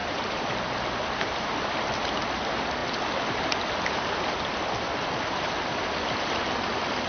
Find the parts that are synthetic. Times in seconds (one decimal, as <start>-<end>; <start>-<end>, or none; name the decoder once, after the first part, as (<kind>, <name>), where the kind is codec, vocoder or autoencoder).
0.0-1.7 (vocoder, BigVGAN v2)